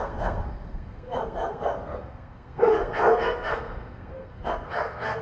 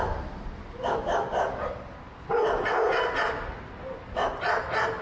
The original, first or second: second